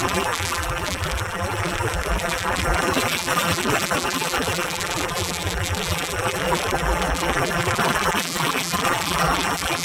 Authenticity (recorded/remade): remade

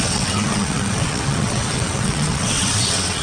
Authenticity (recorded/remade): remade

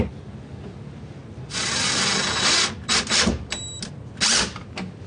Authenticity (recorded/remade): recorded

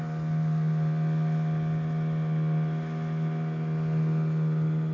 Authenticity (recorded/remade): recorded